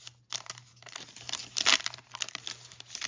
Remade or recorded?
recorded